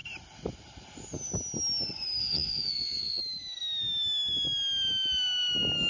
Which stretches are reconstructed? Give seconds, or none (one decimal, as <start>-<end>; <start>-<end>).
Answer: 2.2-3.2